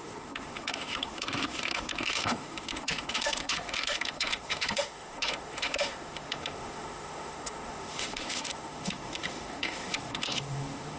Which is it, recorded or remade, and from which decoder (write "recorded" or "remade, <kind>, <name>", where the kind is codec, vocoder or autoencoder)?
remade, autoencoder, DAC-VAE